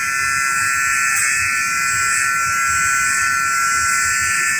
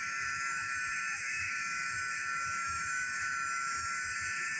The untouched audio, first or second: first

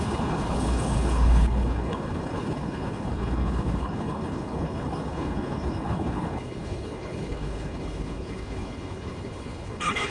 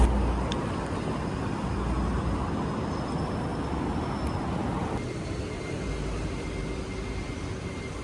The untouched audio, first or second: second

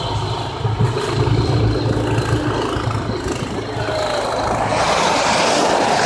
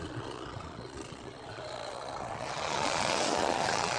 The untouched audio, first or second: first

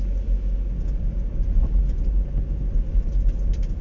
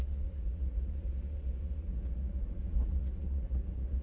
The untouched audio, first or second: first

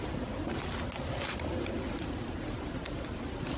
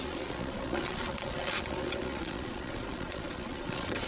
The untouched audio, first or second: first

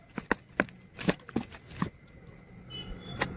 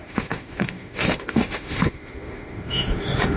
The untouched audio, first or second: first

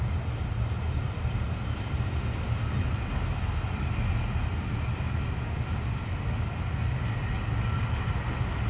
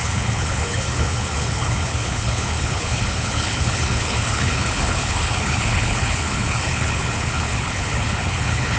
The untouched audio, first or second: first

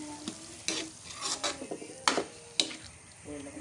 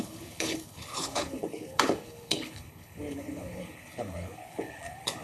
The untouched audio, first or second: first